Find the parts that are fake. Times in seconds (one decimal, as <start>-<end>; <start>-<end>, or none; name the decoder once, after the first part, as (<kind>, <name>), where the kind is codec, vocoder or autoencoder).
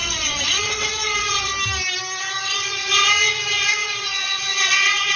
0.0-1.5 (vocoder, WaveNeXt); 2.2-5.2